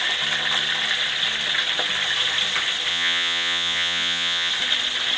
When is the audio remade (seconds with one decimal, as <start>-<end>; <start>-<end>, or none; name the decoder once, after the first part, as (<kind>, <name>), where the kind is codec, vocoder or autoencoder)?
2.9-4.5 (vocoder, Vocos)